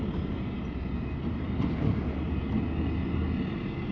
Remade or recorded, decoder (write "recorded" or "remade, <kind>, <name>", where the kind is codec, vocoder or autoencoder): recorded